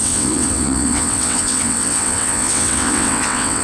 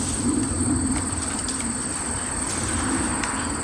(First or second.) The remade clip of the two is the first